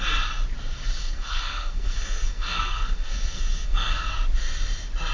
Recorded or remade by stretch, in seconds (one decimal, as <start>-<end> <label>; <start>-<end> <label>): 0.0-1.0 recorded; 1.0-4.1 remade; 4.1-5.1 recorded

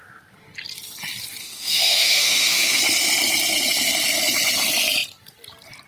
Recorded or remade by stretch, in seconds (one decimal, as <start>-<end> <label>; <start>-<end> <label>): 0.0-1.4 recorded; 1.4-2.8 remade; 2.8-5.9 recorded

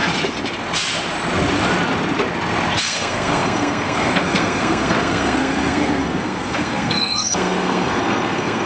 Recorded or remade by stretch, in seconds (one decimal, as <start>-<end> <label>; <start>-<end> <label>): 0.0-2.8 recorded; 2.8-8.7 remade

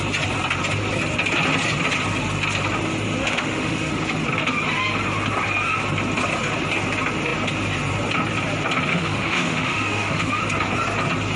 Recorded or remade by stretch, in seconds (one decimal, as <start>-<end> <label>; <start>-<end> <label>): 0.0-3.2 recorded; 3.2-3.9 remade; 3.9-8.9 recorded; 8.9-10.4 remade; 10.4-11.4 recorded

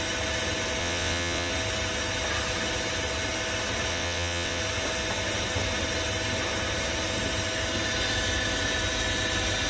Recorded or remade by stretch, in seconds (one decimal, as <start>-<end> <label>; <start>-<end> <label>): 0.0-0.8 recorded; 0.8-1.5 remade; 1.5-3.9 recorded; 3.9-4.6 remade; 4.6-9.7 recorded

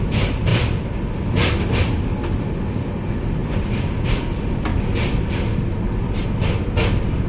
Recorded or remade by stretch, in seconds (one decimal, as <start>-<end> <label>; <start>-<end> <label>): 0.0-3.4 recorded; 3.4-4.2 remade; 4.2-7.3 recorded

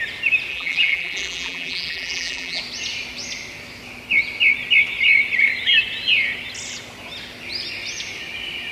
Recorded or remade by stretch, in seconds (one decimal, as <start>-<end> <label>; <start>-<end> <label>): 0.0-0.5 recorded; 0.5-2.6 remade; 2.6-8.7 recorded

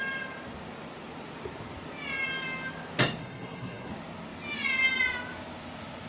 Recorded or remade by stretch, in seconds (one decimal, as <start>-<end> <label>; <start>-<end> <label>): 0.0-3.2 recorded; 3.2-3.9 remade; 3.9-6.1 recorded